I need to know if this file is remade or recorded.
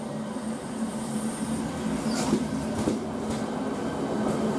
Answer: recorded